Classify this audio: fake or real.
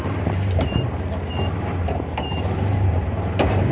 fake